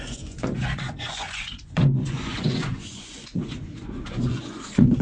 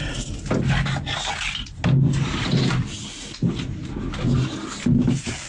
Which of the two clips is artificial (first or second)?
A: first